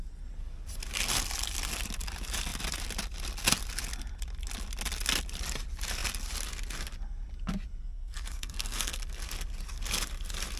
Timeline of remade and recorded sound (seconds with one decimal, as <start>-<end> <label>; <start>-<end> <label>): 0.0-7.8 recorded; 7.8-9.0 remade; 9.0-10.6 recorded